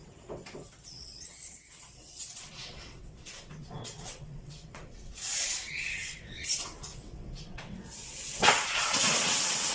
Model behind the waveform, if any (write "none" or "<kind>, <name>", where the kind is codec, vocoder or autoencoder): vocoder, WaveNeXt